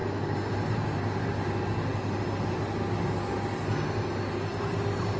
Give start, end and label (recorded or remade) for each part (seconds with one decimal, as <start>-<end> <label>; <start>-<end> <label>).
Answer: 0.0-5.2 recorded